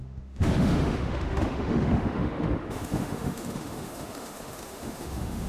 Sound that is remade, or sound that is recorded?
remade